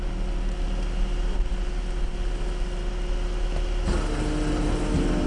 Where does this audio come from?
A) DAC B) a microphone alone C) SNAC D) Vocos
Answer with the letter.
B